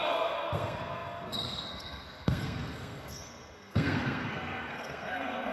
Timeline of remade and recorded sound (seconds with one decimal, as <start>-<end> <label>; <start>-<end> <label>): 0.0-5.5 remade